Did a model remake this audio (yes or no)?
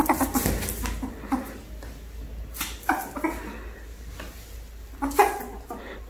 no